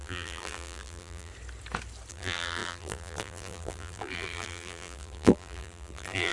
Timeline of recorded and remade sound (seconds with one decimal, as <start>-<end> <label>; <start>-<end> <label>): 0.0-1.3 remade; 1.3-2.1 recorded; 2.1-6.3 remade